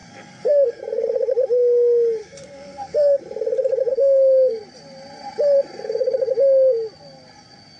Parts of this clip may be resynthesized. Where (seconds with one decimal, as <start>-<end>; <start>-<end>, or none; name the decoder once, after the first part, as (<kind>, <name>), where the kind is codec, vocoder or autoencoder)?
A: 0.0-0.8 (codec, SNAC); 2.2-3.2; 3.9-4.6

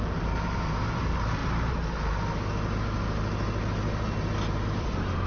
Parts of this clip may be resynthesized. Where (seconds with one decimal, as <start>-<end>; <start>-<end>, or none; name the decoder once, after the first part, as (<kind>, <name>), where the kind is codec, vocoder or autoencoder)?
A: 0.0-1.4 (vocoder, BigVGAN v2); 4.5-5.3

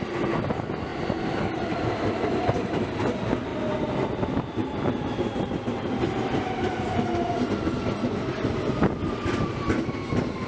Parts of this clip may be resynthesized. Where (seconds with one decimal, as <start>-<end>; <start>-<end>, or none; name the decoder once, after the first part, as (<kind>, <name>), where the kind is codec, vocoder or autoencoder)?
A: none

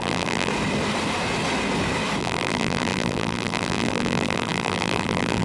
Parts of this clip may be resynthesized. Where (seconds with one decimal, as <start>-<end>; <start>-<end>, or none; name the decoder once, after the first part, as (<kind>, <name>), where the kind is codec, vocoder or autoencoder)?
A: 0.0-0.5 (vocoder, BigVGAN v2); 2.2-5.4

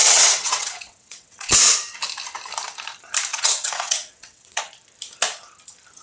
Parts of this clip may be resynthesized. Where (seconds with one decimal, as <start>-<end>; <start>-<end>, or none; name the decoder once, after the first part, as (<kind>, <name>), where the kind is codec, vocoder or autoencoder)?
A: 0.0-1.6 (vocoder, WaveNeXt); 3.3-4.6

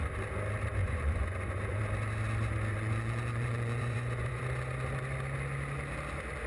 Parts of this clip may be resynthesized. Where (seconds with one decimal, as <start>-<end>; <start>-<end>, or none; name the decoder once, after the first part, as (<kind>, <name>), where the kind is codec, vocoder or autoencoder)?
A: 0.8-1.8 (vocoder, Vocos); 2.7-4.4

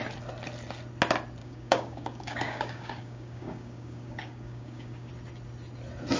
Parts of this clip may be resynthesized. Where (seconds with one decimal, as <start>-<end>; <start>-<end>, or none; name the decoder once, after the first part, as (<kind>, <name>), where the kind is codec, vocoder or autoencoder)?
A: 1.4-5.1 (codec, DAC)

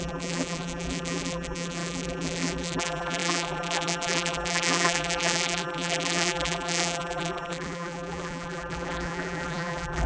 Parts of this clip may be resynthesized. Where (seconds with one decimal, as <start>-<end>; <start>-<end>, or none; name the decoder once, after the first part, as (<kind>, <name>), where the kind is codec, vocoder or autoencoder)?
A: 0.0-10.1 (vocoder, BigVGAN v2)